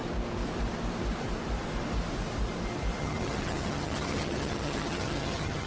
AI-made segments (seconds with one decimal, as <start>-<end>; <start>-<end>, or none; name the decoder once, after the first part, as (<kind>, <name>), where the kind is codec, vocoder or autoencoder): 3.0-5.7 (vocoder, HiFi-GAN)